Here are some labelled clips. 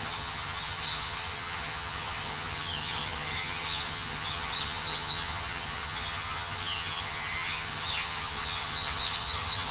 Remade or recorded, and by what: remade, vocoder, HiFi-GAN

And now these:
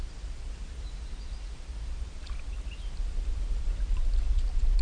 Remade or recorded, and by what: recorded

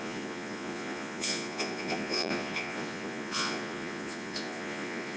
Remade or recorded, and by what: remade, vocoder, Vocos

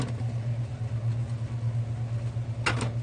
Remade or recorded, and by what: recorded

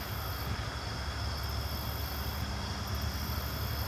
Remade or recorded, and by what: recorded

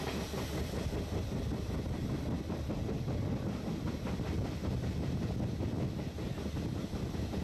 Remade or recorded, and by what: recorded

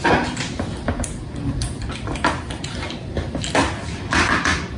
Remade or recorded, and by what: recorded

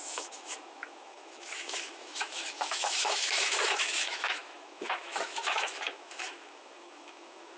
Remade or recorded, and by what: remade, autoencoder, DAC-VAE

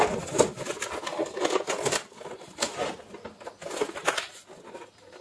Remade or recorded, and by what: recorded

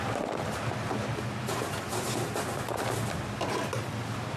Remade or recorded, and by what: recorded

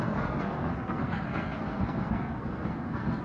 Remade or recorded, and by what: remade, codec, SNAC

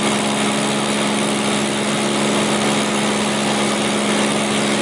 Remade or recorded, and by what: recorded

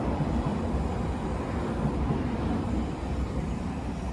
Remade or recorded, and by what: recorded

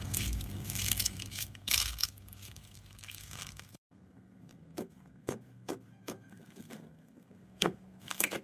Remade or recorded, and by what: remade, codec, SNAC